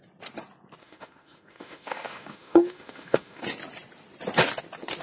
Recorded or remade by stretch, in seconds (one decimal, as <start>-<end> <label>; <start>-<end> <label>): 0.0-0.8 recorded; 0.8-3.4 remade; 3.4-5.0 recorded